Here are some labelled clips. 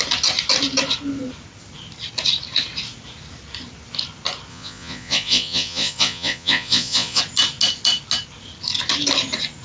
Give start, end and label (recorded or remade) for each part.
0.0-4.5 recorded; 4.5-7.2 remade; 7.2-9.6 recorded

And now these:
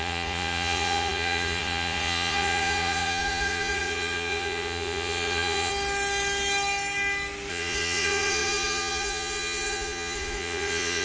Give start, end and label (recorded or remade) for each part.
0.0-5.7 remade; 5.7-7.5 recorded; 7.5-11.0 remade

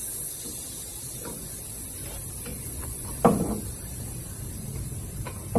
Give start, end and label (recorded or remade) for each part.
0.0-2.5 recorded; 2.5-3.2 remade; 3.2-5.6 recorded

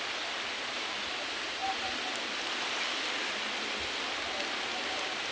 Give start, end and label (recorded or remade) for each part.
0.0-5.3 recorded

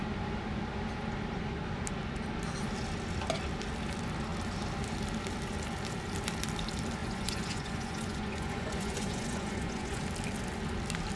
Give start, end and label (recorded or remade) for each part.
0.0-7.0 recorded; 7.0-10.0 remade; 10.0-11.2 recorded

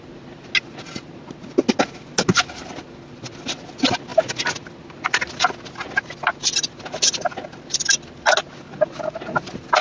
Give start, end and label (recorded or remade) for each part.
0.0-9.8 recorded